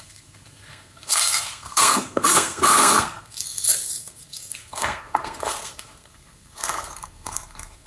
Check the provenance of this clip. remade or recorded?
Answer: remade